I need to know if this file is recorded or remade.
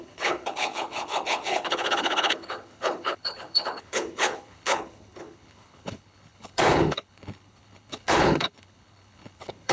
remade